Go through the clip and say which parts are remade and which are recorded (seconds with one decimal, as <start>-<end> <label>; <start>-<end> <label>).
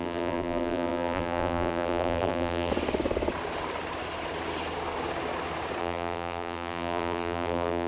0.0-2.7 remade; 2.7-5.8 recorded; 5.8-7.9 remade